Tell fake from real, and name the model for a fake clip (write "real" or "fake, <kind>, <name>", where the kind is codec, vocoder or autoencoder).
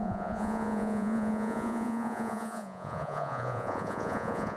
fake, vocoder, Vocos